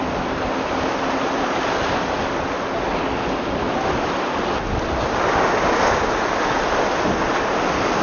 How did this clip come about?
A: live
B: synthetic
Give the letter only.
A